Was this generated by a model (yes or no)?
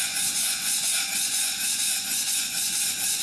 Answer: yes